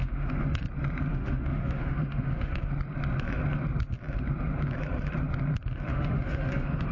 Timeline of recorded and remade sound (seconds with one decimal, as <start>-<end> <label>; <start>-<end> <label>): 0.0-0.6 remade; 0.6-1.1 recorded; 1.1-2.7 remade; 2.7-5.9 recorded; 5.9-6.9 remade